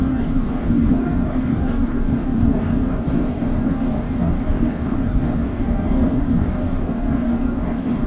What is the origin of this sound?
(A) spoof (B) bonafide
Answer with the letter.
A